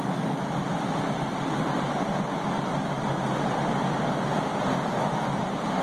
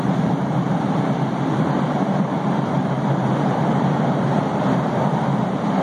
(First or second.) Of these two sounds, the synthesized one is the second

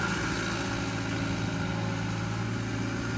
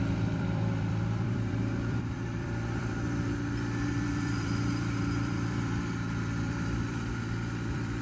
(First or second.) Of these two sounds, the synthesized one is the second